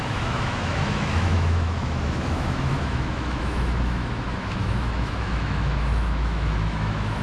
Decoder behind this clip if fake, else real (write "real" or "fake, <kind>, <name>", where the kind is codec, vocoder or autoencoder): fake, autoencoder, DAC-VAE